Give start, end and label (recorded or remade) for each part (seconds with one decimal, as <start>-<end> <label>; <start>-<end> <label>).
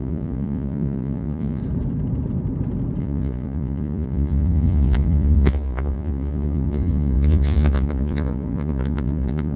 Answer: 0.0-1.6 remade; 1.6-3.0 recorded; 3.0-9.6 remade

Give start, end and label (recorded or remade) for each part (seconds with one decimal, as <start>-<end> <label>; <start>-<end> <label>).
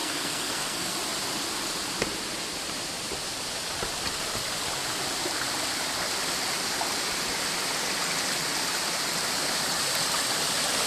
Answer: 0.0-1.0 remade; 1.0-10.9 recorded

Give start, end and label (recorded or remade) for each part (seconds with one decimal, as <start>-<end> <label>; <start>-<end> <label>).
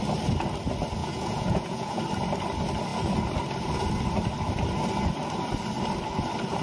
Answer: 0.0-1.0 recorded; 1.0-2.0 remade; 2.0-6.6 recorded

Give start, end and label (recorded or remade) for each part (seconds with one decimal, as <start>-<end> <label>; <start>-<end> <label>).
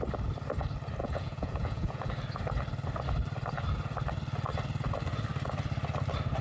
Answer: 0.0-1.0 recorded; 1.0-2.1 remade; 2.1-6.4 recorded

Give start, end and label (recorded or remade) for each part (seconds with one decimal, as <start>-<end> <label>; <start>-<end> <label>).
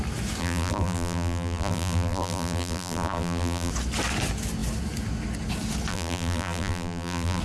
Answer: 0.0-0.4 recorded; 0.4-3.7 remade; 3.7-5.9 recorded; 5.9-7.4 remade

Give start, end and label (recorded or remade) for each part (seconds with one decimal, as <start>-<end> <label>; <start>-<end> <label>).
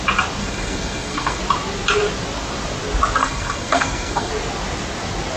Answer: 0.0-0.4 recorded; 0.4-1.4 remade; 1.4-3.2 recorded; 3.2-4.3 remade; 4.3-5.4 recorded